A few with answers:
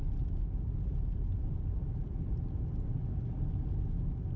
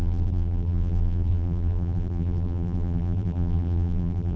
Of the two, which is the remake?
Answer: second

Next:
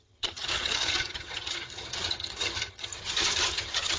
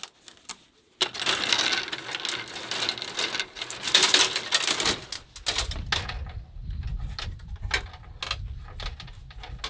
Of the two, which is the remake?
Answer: first